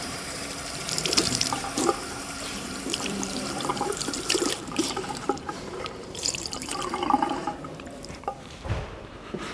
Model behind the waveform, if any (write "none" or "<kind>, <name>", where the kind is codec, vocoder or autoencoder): vocoder, BigVGAN v2